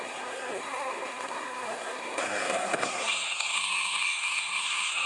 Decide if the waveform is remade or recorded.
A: remade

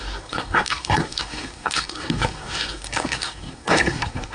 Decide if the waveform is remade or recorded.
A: remade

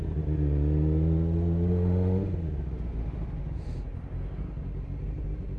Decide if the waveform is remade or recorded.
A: recorded